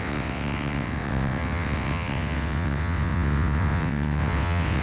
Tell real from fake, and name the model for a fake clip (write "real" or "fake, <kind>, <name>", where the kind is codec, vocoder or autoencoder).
fake, vocoder, WaveNeXt